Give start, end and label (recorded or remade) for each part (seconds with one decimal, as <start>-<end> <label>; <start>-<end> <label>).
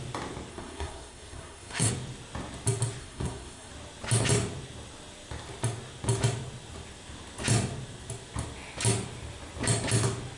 0.0-0.5 recorded; 0.5-1.9 remade; 1.9-3.0 recorded; 3.0-3.7 remade; 3.7-10.4 recorded